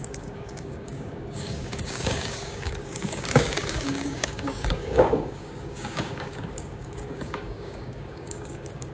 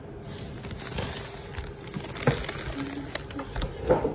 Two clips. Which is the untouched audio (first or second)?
second